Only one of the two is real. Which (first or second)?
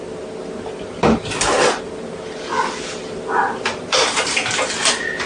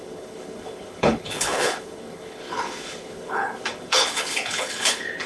first